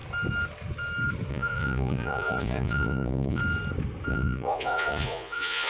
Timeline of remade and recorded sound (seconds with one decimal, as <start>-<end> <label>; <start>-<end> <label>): 0.0-1.3 recorded; 1.3-3.4 remade; 3.4-4.1 recorded; 4.1-5.7 remade